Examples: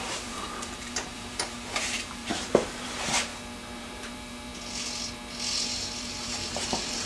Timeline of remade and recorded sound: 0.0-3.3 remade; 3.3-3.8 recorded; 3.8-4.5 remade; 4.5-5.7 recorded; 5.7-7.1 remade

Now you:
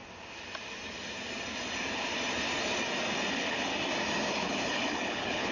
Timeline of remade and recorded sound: 0.0-3.3 recorded; 3.3-3.7 remade; 3.7-4.3 recorded; 4.3-5.5 remade

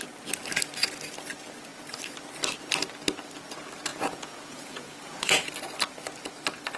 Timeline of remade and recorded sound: 0.0-3.9 recorded; 3.9-5.5 remade; 5.5-6.8 recorded

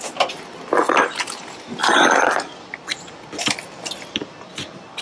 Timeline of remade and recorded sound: 0.0-5.0 recorded

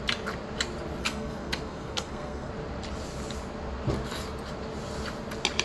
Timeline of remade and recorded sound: 0.0-1.0 recorded; 1.0-2.5 remade; 2.5-5.6 recorded

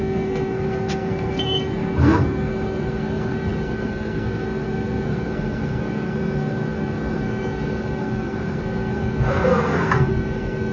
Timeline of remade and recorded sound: 0.0-10.7 remade

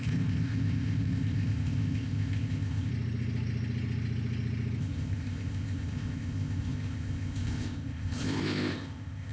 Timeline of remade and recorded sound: 0.0-2.9 remade; 2.9-4.8 recorded; 4.8-9.3 remade

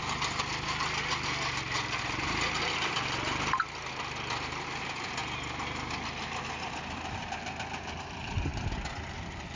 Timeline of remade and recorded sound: 0.0-9.6 recorded